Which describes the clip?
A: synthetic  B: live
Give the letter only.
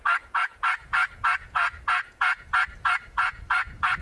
A